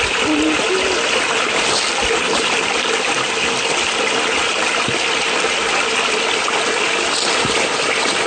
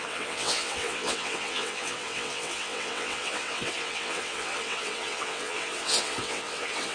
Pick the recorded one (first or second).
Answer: first